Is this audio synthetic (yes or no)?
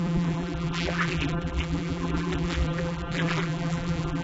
yes